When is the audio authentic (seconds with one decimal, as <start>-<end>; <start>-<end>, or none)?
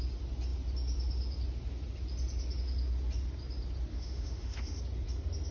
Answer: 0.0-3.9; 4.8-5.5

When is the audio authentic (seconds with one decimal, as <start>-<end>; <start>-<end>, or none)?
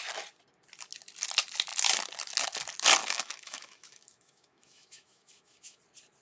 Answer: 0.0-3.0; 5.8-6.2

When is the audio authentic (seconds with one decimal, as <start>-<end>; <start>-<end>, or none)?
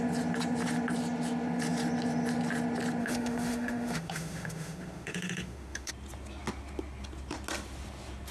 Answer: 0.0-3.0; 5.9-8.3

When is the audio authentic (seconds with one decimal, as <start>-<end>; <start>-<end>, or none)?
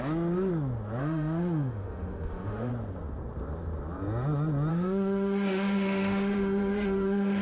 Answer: 0.0-1.0; 2.7-4.7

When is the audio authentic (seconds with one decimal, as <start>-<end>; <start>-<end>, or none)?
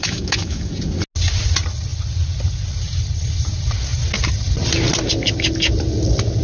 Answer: 0.7-6.4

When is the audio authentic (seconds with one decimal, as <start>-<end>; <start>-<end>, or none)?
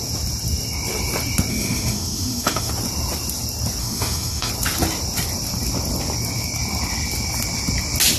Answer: 0.0-1.5; 2.7-3.8; 4.5-8.2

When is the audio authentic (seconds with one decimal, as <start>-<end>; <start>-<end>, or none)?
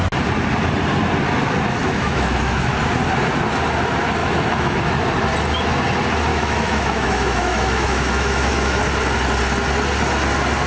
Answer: 0.0-1.8; 2.7-4.2; 4.8-6.3; 8.8-10.7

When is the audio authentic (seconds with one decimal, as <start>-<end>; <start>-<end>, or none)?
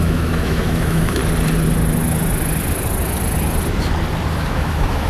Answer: 1.2-4.3